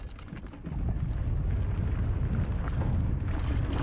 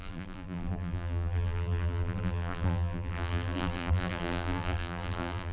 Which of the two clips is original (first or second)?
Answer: first